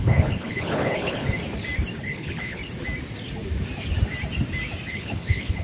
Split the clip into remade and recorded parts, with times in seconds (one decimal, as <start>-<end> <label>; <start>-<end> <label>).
0.0-1.4 remade; 1.4-2.0 recorded; 2.0-2.6 remade; 2.6-4.9 recorded; 4.9-5.6 remade